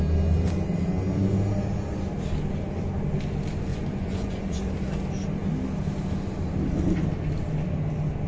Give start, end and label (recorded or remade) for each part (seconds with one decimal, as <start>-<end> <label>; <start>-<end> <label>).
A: 0.0-3.7 recorded; 3.7-4.7 remade; 4.7-8.3 recorded